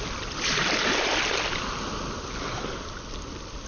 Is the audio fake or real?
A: real